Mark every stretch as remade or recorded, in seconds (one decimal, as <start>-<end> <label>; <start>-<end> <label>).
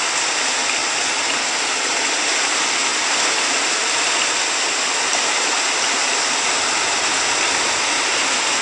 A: 0.0-8.6 recorded